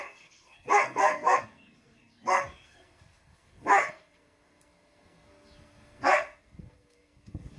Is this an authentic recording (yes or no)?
no